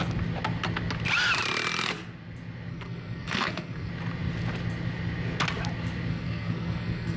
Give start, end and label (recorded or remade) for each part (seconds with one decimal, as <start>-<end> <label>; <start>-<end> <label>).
0.0-2.7 recorded; 2.7-3.9 remade; 3.9-6.1 recorded; 6.1-7.2 remade